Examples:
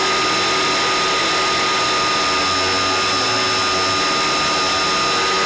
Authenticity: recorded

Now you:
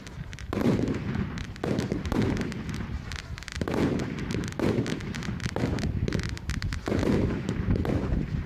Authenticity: recorded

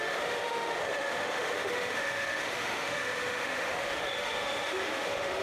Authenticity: remade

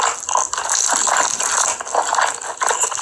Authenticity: recorded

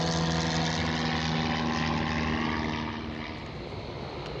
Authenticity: recorded